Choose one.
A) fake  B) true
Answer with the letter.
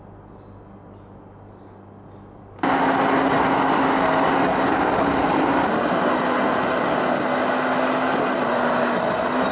B